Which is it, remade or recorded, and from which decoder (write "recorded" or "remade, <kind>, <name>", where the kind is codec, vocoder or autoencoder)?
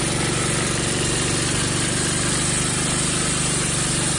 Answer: recorded